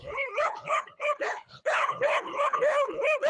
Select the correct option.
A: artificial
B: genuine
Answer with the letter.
A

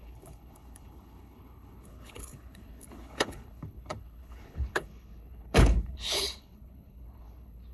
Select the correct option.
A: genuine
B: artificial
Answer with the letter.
B